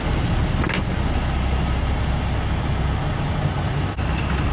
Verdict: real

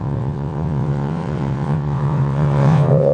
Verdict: fake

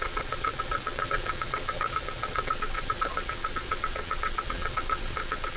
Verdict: fake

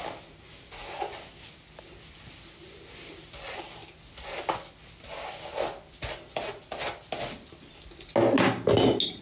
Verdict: real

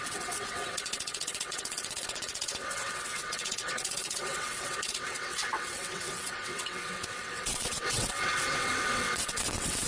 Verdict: fake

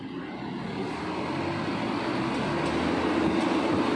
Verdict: real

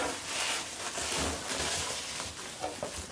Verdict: real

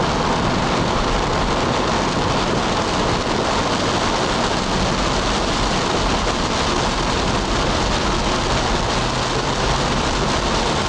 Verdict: real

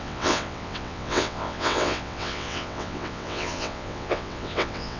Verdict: fake